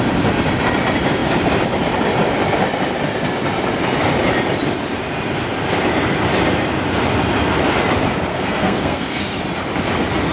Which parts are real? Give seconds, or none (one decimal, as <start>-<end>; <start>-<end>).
0.0-8.3; 9.2-10.3